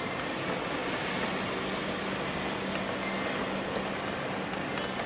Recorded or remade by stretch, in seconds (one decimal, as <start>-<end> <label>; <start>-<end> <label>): 0.0-5.1 recorded